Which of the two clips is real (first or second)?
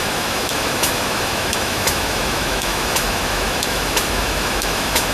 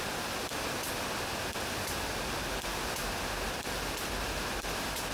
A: second